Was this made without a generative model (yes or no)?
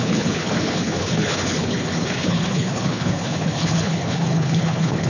no